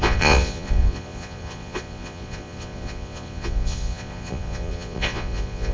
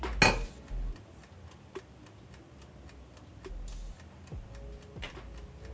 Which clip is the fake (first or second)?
first